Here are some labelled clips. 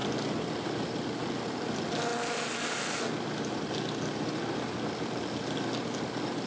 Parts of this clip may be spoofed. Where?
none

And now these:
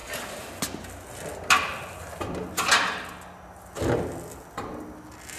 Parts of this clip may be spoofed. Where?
none

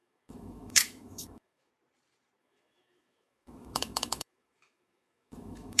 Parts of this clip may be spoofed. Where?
0.0-1.7 (autoencoder, DAC-VAE); 2.4-5.8

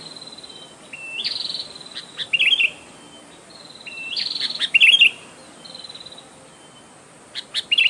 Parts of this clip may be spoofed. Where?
none

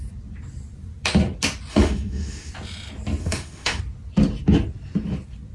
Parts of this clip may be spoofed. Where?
1.7-2.5 (autoencoder, DAC-VAE); 3.2-3.8

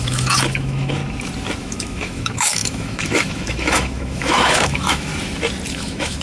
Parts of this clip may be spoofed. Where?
0.0-1.0 (autoencoder, DAC-VAE); 1.6-5.1; 5.7-6.2